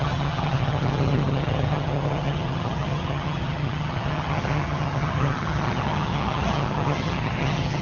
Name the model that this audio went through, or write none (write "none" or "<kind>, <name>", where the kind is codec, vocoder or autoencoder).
vocoder, HiFi-GAN